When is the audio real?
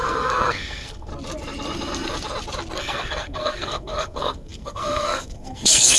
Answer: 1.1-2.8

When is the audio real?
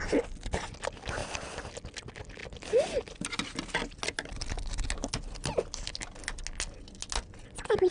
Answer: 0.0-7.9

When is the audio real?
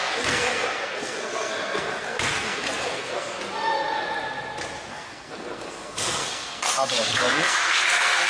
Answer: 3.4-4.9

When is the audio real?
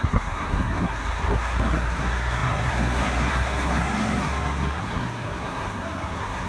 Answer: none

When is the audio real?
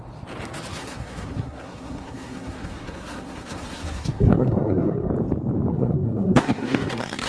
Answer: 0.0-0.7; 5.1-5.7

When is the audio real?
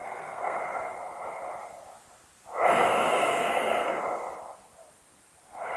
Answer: 0.6-3.0; 4.0-5.8